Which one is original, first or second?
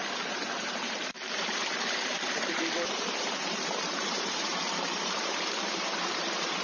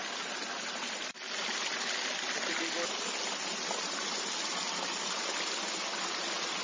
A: second